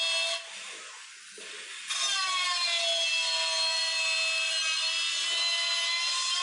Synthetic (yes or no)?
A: no